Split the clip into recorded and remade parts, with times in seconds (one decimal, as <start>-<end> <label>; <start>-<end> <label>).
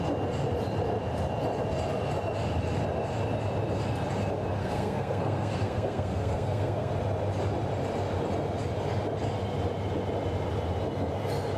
0.0-4.6 recorded; 4.6-6.9 remade; 6.9-11.6 recorded